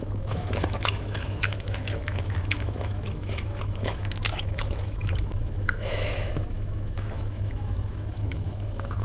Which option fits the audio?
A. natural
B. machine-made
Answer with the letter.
B